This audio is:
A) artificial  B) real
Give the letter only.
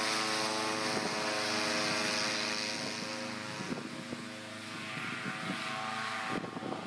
B